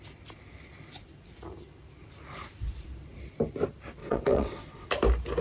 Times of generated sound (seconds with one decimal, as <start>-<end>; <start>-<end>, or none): 4.0-4.9